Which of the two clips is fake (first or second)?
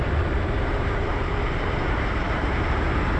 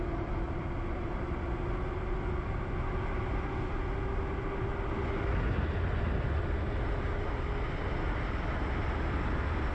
first